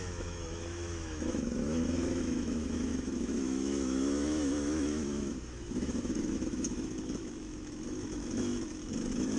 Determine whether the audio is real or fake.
fake